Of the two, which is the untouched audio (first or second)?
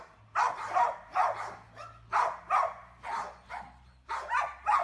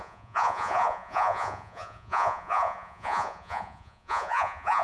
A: first